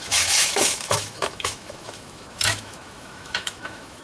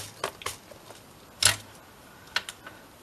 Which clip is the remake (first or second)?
first